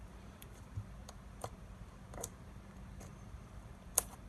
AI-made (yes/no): yes